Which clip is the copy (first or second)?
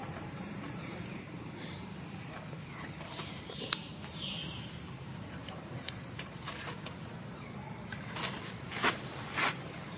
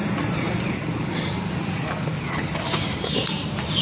first